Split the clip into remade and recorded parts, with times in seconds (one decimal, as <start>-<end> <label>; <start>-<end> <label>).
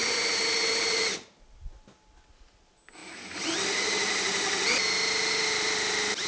0.0-6.3 recorded